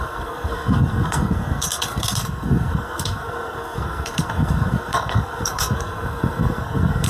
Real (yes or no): no